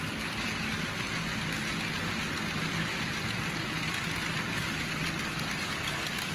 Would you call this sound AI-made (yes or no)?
no